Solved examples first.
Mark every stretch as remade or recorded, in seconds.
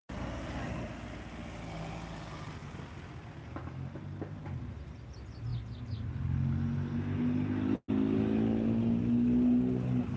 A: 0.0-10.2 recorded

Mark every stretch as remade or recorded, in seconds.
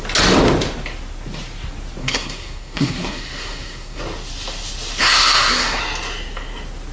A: 0.0-2.0 recorded; 2.0-4.0 remade; 4.0-5.0 recorded; 5.0-5.8 remade; 5.8-6.9 recorded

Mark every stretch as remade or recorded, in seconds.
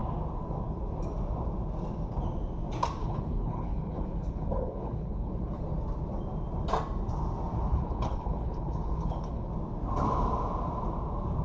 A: 0.0-3.0 recorded; 3.0-5.6 remade; 5.6-7.7 recorded; 7.7-9.5 remade; 9.5-11.4 recorded